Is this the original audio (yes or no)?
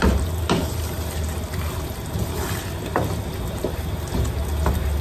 yes